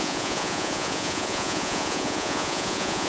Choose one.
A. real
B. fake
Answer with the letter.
B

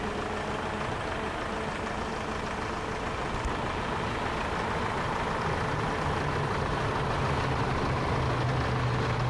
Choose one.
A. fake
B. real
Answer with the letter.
B